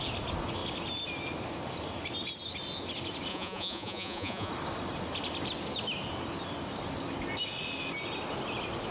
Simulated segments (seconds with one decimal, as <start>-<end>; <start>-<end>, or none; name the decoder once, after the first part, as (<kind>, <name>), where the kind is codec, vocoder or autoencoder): 3.3-4.5 (vocoder, Vocos)